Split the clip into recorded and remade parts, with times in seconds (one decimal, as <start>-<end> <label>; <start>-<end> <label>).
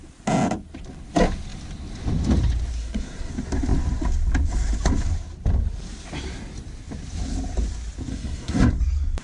0.0-2.8 recorded; 2.8-3.3 remade; 3.3-8.1 recorded; 8.1-8.7 remade; 8.7-9.2 recorded